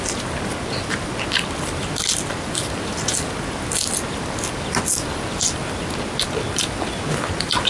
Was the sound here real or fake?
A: real